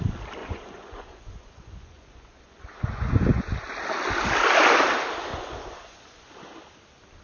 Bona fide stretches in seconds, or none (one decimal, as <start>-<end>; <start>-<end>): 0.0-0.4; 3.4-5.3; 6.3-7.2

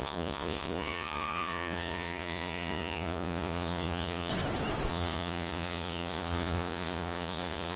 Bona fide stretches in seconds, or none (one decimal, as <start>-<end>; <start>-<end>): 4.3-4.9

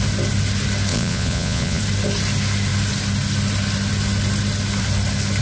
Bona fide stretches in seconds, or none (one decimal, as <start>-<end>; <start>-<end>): 0.0-0.9; 1.8-5.4